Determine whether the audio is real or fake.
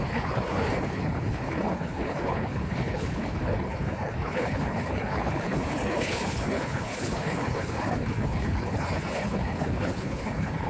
fake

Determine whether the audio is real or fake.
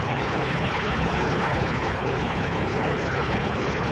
fake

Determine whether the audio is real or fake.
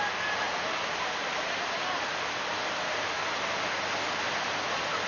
real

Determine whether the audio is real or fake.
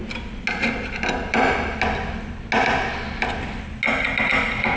real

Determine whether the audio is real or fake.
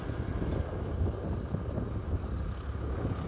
real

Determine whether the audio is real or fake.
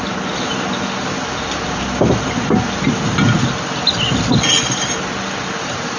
real